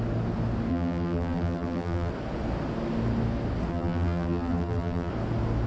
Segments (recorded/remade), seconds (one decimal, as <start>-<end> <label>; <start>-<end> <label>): 0.0-0.7 recorded; 0.7-2.1 remade; 2.1-3.7 recorded; 3.7-5.1 remade; 5.1-5.7 recorded